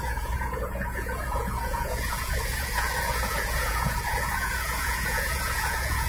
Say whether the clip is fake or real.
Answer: fake